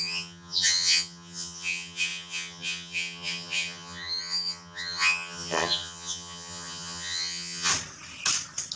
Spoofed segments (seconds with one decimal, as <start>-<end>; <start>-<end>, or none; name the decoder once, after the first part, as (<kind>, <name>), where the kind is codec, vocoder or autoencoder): 0.0-7.7 (vocoder, HiFi-GAN)